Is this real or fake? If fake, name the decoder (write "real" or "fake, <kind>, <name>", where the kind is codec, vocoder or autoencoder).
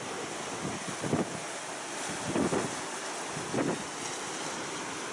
real